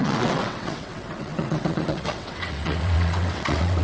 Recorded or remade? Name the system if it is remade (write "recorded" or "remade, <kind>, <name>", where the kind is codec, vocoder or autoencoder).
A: remade, vocoder, WaveNeXt